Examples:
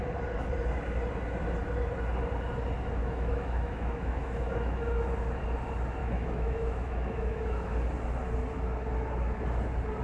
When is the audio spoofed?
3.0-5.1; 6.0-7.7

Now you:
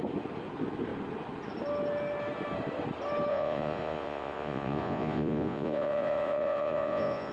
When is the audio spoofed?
3.3-7.3

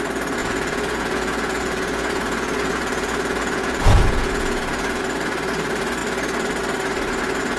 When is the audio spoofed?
0.4-5.0

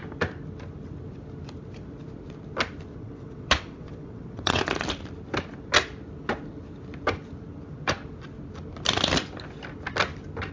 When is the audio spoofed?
2.9-4.6

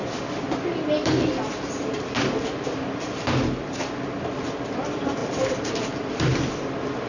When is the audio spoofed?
none

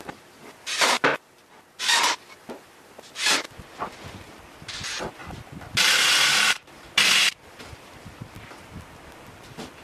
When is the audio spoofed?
0.0-1.1; 1.8-5.2; 6.3-9.8

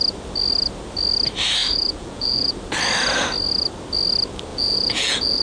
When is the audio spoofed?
1.6-2.5; 4.5-5.4

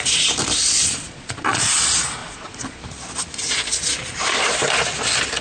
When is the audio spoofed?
0.8-1.8; 2.2-2.8